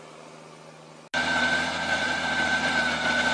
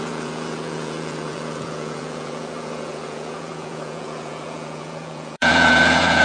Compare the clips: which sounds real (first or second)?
first